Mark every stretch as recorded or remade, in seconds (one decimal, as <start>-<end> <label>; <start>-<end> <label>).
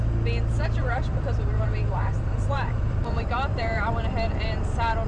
0.0-0.8 recorded; 0.8-3.9 remade; 3.9-5.1 recorded